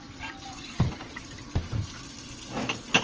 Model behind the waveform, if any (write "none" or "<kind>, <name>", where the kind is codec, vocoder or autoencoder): none